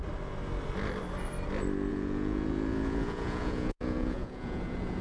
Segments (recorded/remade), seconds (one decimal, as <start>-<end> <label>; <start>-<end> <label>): 0.0-1.9 recorded; 1.9-5.0 remade